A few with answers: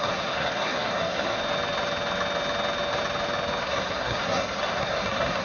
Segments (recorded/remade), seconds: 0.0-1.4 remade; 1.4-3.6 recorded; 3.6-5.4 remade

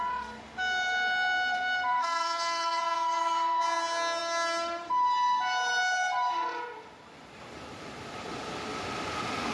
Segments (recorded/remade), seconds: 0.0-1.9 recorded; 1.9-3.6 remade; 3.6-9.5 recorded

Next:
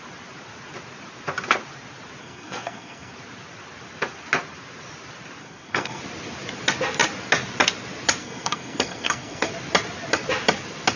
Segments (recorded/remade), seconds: 0.0-2.2 recorded; 2.2-3.1 remade; 3.1-5.4 recorded; 5.4-6.0 remade; 6.0-8.2 recorded; 8.2-9.5 remade; 9.5-11.0 recorded

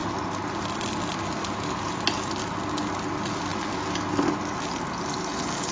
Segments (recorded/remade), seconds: 0.0-5.7 recorded

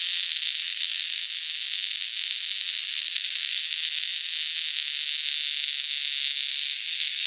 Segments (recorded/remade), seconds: 0.0-0.6 recorded; 0.6-1.2 remade; 1.2-2.7 recorded; 2.7-3.6 remade; 3.6-6.5 recorded; 6.5-7.3 remade